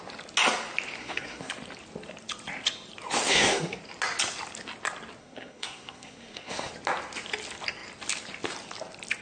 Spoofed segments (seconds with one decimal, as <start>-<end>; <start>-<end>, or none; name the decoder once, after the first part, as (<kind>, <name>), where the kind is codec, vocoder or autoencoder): 1.0-1.5 (codec, SNAC); 3.3-3.8; 5.2-6.7